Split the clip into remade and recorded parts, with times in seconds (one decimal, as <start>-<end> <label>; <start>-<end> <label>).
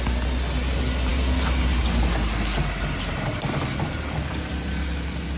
0.0-5.4 recorded